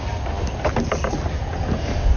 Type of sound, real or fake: real